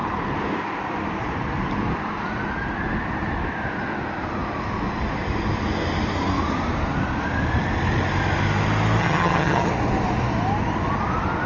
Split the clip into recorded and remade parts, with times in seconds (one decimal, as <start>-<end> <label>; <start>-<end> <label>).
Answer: 0.0-9.0 recorded; 9.0-9.7 remade; 9.7-11.5 recorded